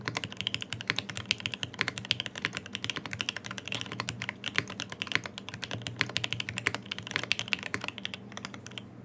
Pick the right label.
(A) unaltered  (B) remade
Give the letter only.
A